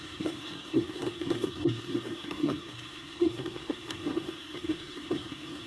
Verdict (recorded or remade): remade